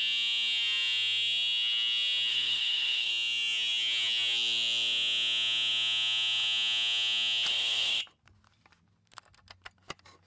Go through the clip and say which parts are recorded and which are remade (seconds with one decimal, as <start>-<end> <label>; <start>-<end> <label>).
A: 0.0-2.3 recorded; 2.3-3.1 remade; 3.1-7.5 recorded; 7.5-8.0 remade; 8.0-10.3 recorded